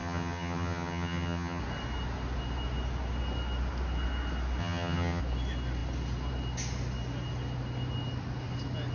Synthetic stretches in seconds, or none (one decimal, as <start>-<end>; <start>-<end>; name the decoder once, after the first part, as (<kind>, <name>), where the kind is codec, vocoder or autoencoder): 0.0-1.6 (vocoder, HiFi-GAN); 4.6-5.2